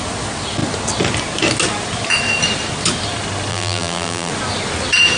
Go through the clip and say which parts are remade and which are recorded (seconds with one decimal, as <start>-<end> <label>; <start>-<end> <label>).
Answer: 0.0-3.5 recorded; 3.5-4.3 remade; 4.3-5.2 recorded